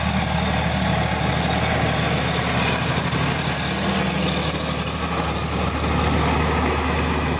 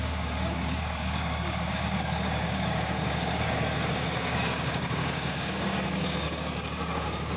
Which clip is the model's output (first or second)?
second